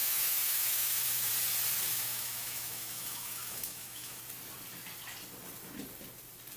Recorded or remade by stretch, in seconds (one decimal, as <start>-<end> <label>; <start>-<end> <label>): 0.0-1.3 remade; 1.3-1.9 recorded; 1.9-4.2 remade; 4.2-6.6 recorded